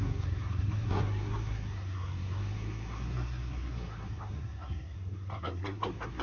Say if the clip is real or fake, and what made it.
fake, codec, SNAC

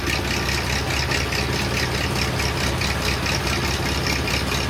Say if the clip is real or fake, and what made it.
real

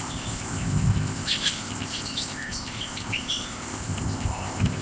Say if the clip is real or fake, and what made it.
fake, codec, ZipCodec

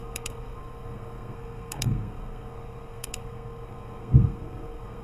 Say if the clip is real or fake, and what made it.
fake, codec, SNAC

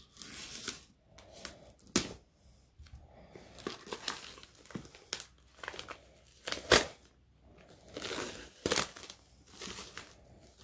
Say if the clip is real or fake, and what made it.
real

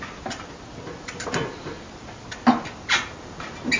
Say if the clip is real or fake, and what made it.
real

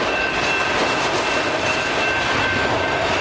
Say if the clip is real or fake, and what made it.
fake, vocoder, BigVGAN v2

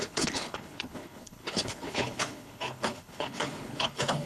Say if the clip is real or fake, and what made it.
fake, codec, HILCodec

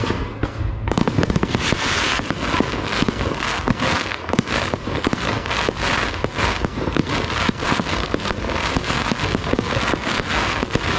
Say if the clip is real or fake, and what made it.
fake, codec, SNAC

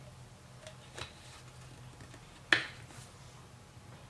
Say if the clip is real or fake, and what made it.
real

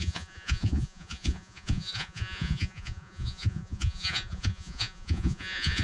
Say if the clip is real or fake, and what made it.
fake, vocoder, Vocos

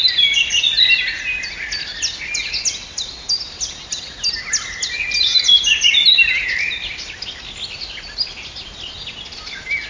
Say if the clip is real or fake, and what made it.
real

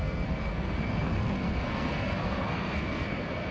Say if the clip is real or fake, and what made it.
fake, codec, SNAC